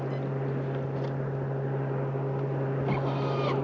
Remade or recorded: recorded